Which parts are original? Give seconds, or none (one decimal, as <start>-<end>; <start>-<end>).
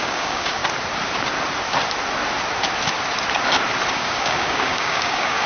0.6-3.9